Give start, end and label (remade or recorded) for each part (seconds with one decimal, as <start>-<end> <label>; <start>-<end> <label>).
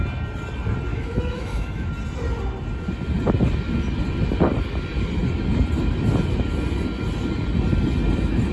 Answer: 0.0-0.9 recorded; 0.9-1.9 remade; 1.9-8.5 recorded